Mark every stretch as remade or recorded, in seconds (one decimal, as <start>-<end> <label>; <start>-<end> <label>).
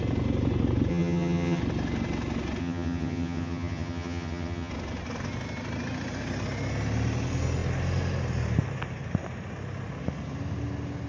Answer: 0.0-0.9 recorded; 0.9-1.6 remade; 1.6-2.6 recorded; 2.6-4.7 remade; 4.7-11.1 recorded